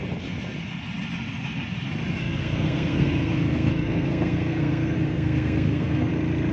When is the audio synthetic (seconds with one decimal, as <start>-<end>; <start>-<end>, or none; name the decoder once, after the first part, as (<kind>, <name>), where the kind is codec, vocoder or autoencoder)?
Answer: 2.2-6.1 (codec, SNAC)